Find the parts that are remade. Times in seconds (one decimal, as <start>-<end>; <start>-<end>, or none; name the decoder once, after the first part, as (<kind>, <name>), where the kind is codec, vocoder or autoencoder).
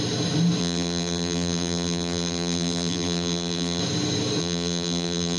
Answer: 0.6-3.8 (vocoder, BigVGAN v2); 4.4-5.4